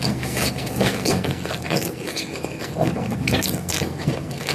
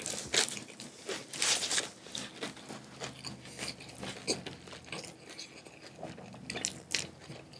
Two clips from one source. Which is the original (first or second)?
second